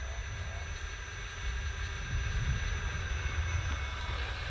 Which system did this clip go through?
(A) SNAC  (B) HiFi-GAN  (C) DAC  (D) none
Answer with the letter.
D